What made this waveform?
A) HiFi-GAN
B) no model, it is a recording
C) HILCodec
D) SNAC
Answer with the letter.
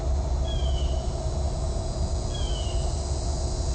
B